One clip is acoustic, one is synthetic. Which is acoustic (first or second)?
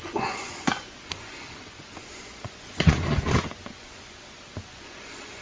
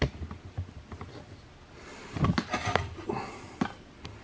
second